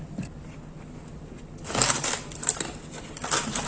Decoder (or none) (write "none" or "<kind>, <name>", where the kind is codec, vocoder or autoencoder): none